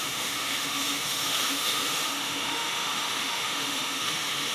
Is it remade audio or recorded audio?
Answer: remade